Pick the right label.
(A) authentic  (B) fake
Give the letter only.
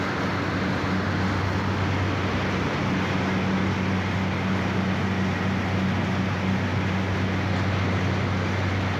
A